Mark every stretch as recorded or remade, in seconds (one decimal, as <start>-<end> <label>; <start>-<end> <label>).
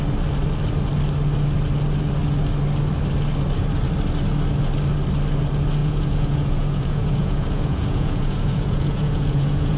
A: 0.0-5.8 recorded; 5.8-9.8 remade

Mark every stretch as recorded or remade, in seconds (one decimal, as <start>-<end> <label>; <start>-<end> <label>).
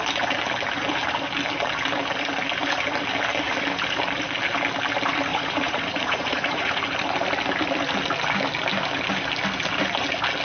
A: 0.0-5.3 recorded; 5.3-6.8 remade; 6.8-10.4 recorded